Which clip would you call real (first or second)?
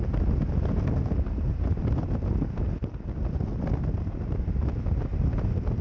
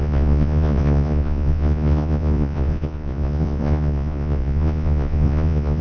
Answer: first